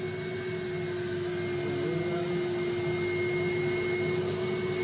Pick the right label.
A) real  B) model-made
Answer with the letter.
A